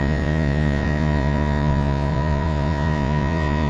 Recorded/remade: remade